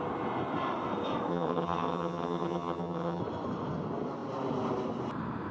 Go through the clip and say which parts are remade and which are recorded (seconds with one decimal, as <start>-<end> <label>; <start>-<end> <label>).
0.0-1.3 recorded; 1.3-3.2 remade; 3.2-5.5 recorded